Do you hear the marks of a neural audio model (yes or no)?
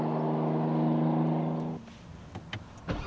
no